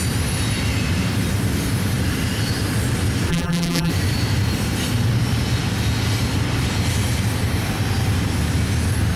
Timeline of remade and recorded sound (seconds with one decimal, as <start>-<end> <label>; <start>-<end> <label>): 0.0-3.3 recorded; 3.3-3.9 remade; 3.9-9.2 recorded

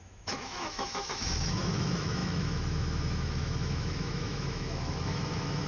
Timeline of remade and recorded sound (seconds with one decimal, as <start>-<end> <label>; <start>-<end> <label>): 0.0-5.7 remade

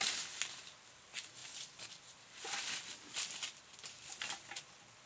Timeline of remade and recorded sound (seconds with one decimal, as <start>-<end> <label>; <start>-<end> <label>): 0.0-5.1 recorded

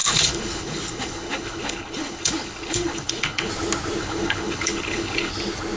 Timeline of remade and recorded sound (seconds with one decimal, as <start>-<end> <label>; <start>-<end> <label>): 0.0-3.5 remade; 3.5-4.0 recorded; 4.0-5.3 remade; 5.3-5.8 recorded